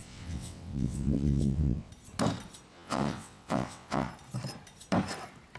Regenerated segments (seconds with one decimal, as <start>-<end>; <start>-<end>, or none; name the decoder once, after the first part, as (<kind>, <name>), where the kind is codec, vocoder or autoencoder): 0.0-1.9 (vocoder, WaveNeXt); 2.7-4.1